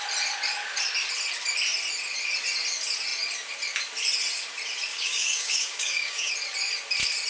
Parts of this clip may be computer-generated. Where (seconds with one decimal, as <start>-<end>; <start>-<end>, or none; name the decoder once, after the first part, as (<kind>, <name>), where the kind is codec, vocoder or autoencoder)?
4.9-6.3 (codec, DAC)